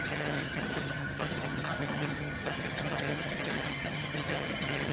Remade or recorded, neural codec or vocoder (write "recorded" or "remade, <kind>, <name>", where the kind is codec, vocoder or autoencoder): remade, vocoder, HiFi-GAN